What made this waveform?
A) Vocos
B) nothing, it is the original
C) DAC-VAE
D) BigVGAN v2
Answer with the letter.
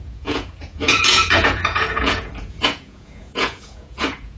A